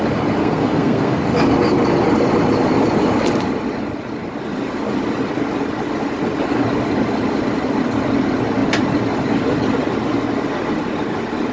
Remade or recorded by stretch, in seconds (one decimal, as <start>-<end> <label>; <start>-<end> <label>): 0.0-0.4 recorded; 0.4-1.2 remade; 1.2-11.5 recorded